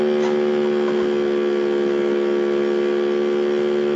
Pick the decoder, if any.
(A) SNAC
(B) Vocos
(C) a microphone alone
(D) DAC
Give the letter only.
C